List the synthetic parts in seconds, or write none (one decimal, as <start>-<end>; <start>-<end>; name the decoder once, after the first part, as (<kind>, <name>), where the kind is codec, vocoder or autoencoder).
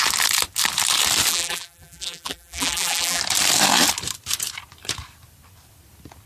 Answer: 1.3-3.2 (vocoder, BigVGAN v2)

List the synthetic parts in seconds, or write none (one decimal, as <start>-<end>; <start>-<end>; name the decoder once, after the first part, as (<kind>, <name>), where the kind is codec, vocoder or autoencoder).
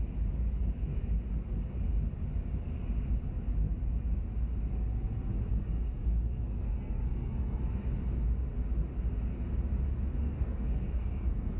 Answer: 5.5-7.6 (codec, SNAC); 10.2-11.6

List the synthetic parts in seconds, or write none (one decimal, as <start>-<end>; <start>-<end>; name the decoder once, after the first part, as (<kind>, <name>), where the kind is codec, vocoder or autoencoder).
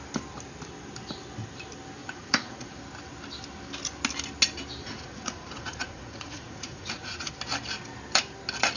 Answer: 2.0-2.8 (vocoder, Vocos); 4.8-7.3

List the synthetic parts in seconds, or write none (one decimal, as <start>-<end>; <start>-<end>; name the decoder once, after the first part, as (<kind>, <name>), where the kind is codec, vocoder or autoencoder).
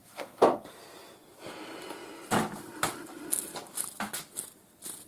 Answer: 0.0-0.7 (codec, SNAC)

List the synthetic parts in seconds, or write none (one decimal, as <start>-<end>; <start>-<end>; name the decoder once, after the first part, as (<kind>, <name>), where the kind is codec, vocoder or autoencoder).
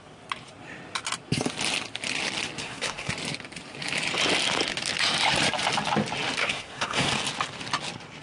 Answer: 2.6-3.1 (codec, SNAC); 6.4-7.1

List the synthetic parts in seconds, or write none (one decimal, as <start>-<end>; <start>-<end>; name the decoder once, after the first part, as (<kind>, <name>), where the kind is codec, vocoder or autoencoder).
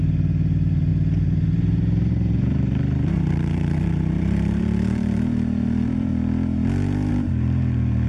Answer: 0.0-6.1 (vocoder, BigVGAN v2); 7.1-8.1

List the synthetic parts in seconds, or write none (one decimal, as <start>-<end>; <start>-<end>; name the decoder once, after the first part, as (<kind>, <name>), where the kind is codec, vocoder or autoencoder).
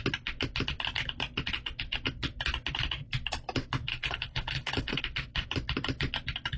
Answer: 3.9-5.0 (codec, HILCodec)